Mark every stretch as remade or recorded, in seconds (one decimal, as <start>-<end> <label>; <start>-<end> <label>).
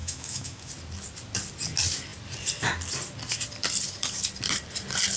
0.0-0.7 remade; 0.7-5.2 recorded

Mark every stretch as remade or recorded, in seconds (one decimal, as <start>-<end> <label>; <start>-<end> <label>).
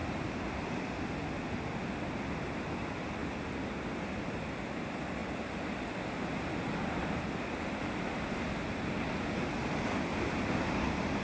0.0-0.8 remade; 0.8-3.2 recorded; 3.2-3.9 remade; 3.9-11.2 recorded